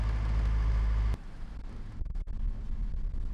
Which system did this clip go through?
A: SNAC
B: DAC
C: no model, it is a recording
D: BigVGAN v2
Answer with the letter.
C